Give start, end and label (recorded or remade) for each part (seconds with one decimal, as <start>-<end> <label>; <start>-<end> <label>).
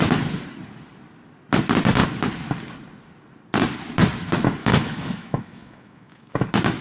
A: 0.0-4.6 recorded; 4.6-6.3 remade; 6.3-6.8 recorded